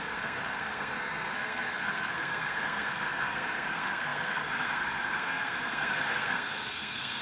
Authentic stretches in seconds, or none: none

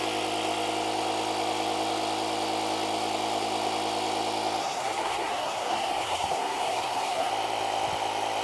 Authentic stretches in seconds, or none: 0.0-4.6; 7.3-8.4